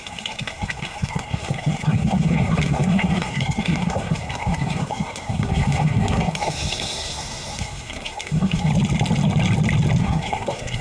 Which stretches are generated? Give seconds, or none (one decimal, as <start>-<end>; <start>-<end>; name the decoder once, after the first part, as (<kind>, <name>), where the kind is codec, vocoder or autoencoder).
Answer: 0.0-8.7 (codec, SNAC); 10.0-10.8